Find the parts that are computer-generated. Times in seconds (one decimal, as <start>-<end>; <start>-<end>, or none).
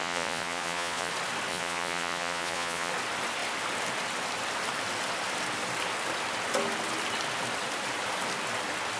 0.0-1.1; 1.5-2.9